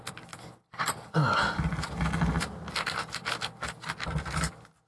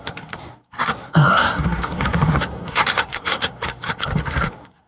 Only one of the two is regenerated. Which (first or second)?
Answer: second